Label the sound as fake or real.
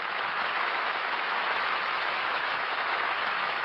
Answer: fake